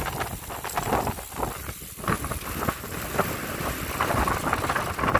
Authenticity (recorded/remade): recorded